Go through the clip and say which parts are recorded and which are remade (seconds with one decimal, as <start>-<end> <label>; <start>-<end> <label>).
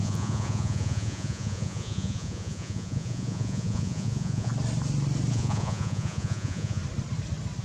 0.0-4.5 remade; 4.5-5.3 recorded; 5.3-6.8 remade; 6.8-7.6 recorded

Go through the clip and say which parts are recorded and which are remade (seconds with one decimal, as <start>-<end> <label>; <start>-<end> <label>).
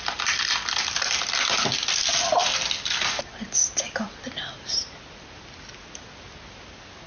0.0-7.1 recorded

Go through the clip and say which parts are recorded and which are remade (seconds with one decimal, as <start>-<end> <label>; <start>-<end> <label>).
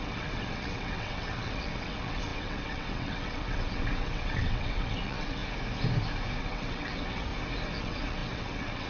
0.0-5.4 remade; 5.4-6.4 recorded; 6.4-7.3 remade; 7.3-7.8 recorded; 7.8-8.9 remade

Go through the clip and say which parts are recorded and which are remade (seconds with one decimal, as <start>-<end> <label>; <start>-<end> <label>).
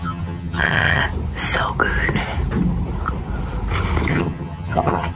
0.0-1.0 remade; 1.0-4.1 recorded; 4.1-5.2 remade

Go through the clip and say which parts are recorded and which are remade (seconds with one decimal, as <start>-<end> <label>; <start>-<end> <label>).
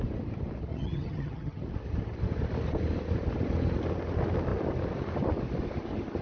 0.0-0.7 recorded; 0.7-1.6 remade; 1.6-6.2 recorded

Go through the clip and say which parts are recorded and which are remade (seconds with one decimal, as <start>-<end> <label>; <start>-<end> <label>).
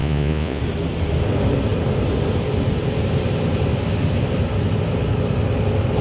0.0-0.6 remade; 0.6-6.0 recorded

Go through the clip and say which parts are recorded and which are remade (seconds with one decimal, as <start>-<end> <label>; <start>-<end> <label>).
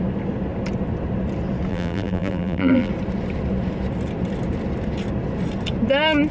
0.0-1.7 recorded; 1.7-2.9 remade; 2.9-6.3 recorded